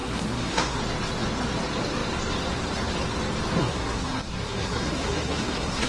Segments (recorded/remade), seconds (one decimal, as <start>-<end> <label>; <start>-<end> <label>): 0.0-0.8 remade; 0.8-3.6 recorded; 3.6-5.9 remade